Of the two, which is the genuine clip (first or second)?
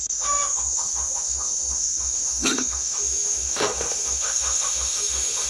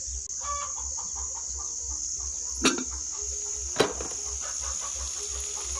second